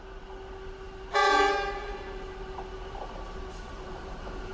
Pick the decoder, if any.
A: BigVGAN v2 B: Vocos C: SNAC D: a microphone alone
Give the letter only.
D